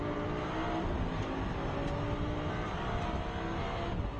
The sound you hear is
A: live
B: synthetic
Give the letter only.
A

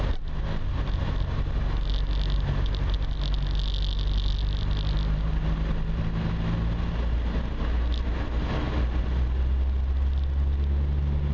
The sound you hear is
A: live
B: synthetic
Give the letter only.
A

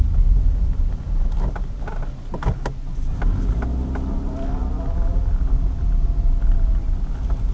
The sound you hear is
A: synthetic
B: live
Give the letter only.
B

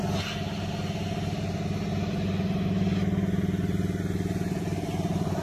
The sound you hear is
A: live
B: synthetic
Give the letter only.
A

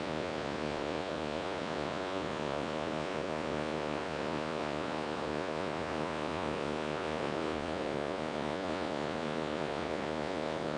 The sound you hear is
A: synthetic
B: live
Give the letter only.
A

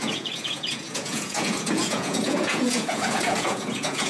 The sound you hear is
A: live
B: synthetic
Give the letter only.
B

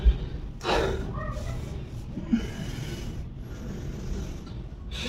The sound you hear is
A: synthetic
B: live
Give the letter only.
B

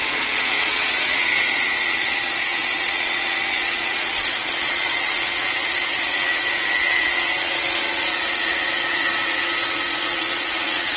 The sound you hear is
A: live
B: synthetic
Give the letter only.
B